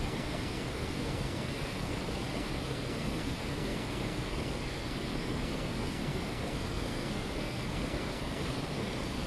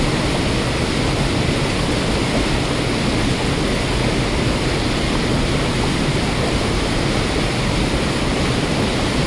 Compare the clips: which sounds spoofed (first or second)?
first